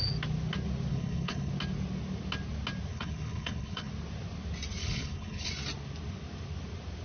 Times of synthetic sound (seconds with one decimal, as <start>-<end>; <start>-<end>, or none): 0.9-1.5; 2.9-3.9; 4.8-5.5